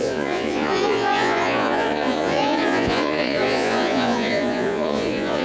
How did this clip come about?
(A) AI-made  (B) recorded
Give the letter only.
A